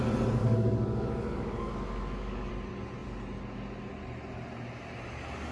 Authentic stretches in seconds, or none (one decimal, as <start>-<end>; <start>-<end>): 0.0-0.4; 2.5-5.5